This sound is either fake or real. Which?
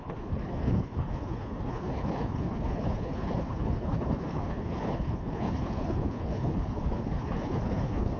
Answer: fake